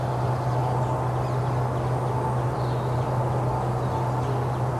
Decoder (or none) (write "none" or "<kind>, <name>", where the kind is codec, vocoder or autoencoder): none